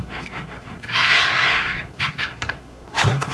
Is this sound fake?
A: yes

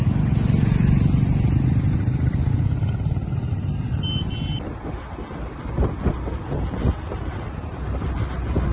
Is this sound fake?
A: no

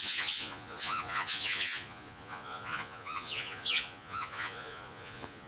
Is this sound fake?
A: yes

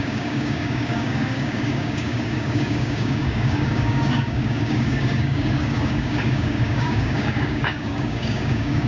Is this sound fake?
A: yes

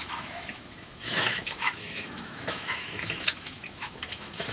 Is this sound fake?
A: yes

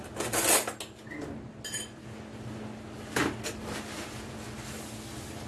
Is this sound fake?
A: no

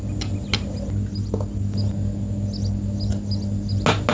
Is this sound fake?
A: no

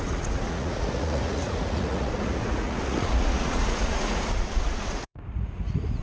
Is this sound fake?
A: yes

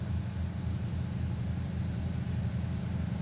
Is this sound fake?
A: no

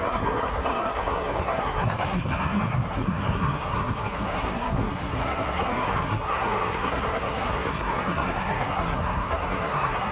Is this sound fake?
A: yes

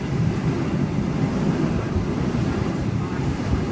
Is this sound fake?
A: yes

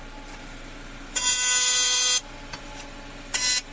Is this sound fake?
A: yes